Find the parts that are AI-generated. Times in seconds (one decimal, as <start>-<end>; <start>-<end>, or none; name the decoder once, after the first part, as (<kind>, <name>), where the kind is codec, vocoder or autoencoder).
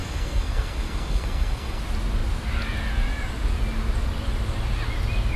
0.0-1.8 (codec, SNAC)